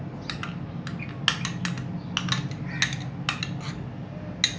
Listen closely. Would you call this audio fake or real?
real